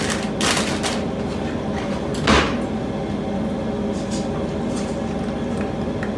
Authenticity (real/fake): real